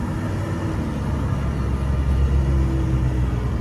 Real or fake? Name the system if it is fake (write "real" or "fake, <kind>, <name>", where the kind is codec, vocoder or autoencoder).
real